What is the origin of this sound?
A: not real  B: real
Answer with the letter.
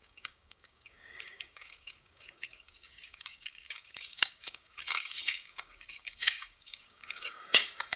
A